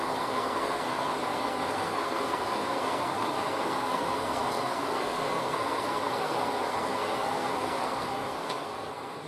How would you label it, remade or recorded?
remade